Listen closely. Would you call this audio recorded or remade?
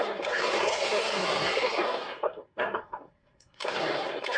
remade